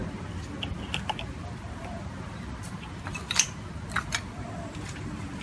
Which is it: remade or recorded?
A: recorded